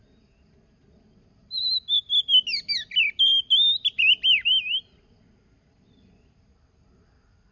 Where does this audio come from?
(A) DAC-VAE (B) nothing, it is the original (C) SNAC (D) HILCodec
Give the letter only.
B